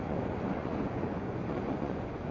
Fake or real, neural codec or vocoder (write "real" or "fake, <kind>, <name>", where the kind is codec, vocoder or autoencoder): fake, vocoder, Vocos